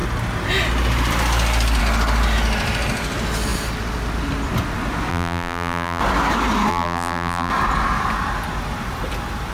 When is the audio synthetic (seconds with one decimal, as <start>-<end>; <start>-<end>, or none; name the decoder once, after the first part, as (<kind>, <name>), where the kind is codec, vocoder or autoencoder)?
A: 5.1-6.0 (vocoder, BigVGAN v2); 6.7-7.5